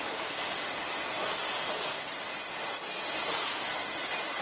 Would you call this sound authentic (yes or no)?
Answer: yes